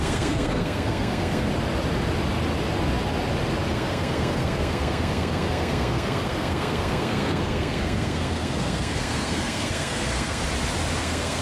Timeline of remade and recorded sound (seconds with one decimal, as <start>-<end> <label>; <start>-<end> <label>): 0.0-1.5 remade; 1.5-3.7 recorded; 3.7-10.4 remade; 10.4-11.0 recorded; 11.0-11.4 remade